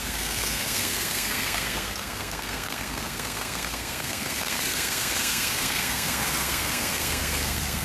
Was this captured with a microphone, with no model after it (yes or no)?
no